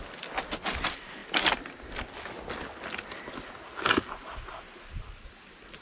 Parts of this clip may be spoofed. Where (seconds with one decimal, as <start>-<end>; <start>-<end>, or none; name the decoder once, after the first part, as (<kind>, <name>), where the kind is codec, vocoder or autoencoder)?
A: none